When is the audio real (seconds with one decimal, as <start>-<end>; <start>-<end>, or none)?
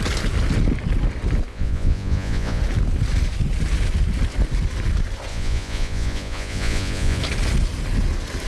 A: 0.0-1.5; 2.6-5.3; 7.2-8.5